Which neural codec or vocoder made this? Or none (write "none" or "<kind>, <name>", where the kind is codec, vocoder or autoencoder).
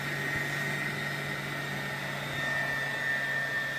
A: none